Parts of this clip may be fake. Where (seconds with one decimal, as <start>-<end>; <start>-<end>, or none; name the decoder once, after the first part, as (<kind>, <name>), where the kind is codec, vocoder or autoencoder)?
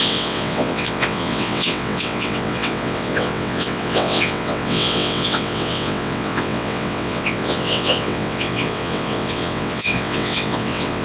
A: 0.0-11.0 (vocoder, WaveNeXt)